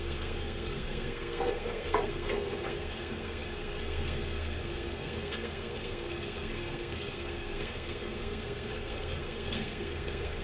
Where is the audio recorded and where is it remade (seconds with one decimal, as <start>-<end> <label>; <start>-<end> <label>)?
0.0-10.4 remade